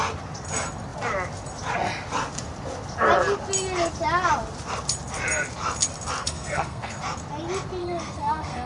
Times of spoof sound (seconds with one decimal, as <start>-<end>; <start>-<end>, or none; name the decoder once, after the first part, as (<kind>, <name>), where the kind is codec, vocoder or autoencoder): 6.2-7.0 (codec, SNAC); 7.8-8.7